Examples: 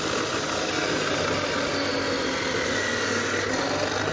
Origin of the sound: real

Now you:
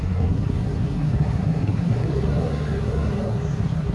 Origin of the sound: fake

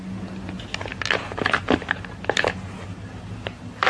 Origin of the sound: real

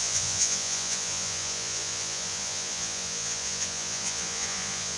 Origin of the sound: fake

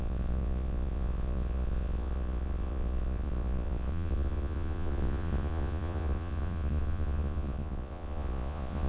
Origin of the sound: fake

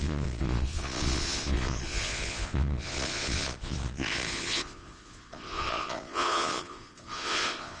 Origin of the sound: fake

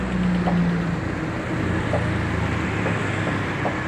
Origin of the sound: real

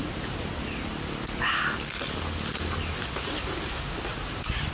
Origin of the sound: real